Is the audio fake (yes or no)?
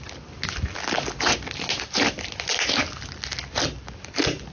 no